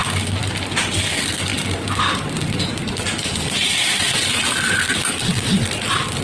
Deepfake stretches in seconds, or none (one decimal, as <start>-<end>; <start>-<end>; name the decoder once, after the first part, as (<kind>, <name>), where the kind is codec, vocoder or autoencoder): 1.5-5.1 (vocoder, BigVGAN v2)